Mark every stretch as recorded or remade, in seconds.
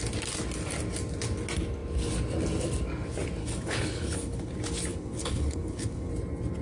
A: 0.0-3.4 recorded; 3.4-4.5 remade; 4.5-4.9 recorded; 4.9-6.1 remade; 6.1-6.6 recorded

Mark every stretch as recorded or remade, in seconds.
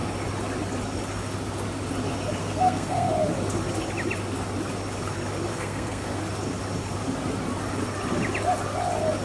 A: 0.0-2.4 recorded; 2.4-3.1 remade; 3.1-5.5 recorded; 5.5-6.2 remade; 6.2-9.2 recorded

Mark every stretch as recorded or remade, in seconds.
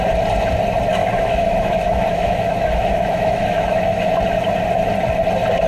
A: 0.0-1.0 recorded; 1.0-4.1 remade; 4.1-5.7 recorded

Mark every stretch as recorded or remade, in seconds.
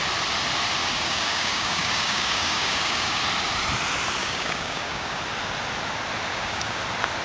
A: 0.0-0.8 recorded; 0.8-3.2 remade; 3.2-4.2 recorded; 4.2-5.2 remade; 5.2-6.3 recorded; 6.3-6.8 remade; 6.8-7.2 recorded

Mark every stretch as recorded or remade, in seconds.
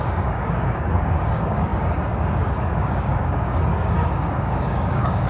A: 0.0-5.3 remade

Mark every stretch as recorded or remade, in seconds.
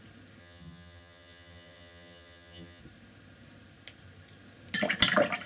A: 0.0-0.4 recorded; 0.4-2.8 remade; 2.8-5.5 recorded